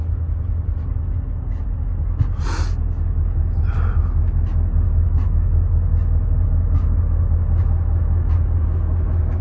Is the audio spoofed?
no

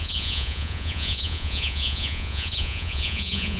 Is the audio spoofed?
yes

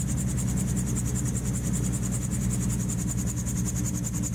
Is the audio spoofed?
no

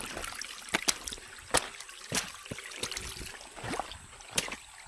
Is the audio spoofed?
no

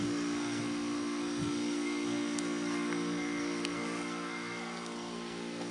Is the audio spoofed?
yes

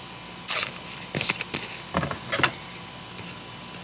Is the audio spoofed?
no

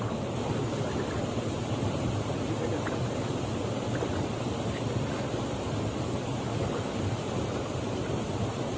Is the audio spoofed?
no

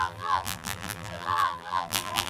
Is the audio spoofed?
yes